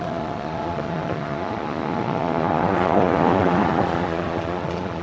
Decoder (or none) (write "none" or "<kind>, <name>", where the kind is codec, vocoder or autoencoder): vocoder, Vocos